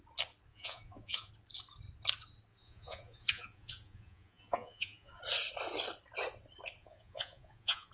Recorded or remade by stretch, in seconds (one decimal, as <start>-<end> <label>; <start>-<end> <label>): 0.0-0.5 recorded; 0.5-1.3 remade; 1.3-2.5 recorded; 2.5-5.2 remade; 5.2-6.8 recorded; 6.8-7.9 remade